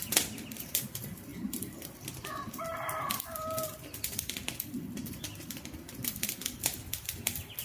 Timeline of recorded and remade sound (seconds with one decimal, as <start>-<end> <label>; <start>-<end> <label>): 0.0-7.6 remade